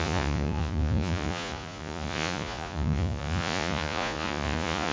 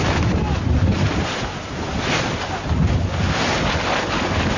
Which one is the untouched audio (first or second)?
second